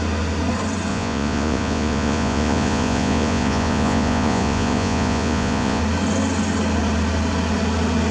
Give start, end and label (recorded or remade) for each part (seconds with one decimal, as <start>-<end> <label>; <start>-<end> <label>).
0.0-0.9 recorded; 0.9-5.8 remade; 5.8-8.1 recorded